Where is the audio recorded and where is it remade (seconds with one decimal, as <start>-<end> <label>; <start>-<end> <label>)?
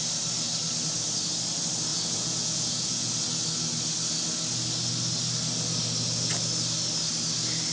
0.0-1.9 recorded; 1.9-3.1 remade; 3.1-7.7 recorded